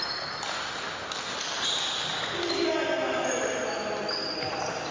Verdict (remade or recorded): recorded